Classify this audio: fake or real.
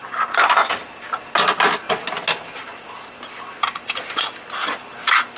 real